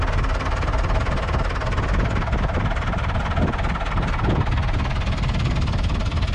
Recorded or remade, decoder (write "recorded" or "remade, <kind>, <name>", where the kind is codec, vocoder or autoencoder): recorded